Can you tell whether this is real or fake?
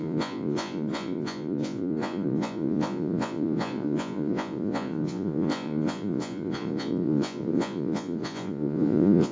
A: fake